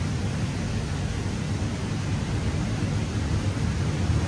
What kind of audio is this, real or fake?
fake